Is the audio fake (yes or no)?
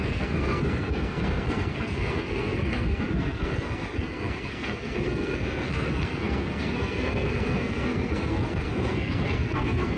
yes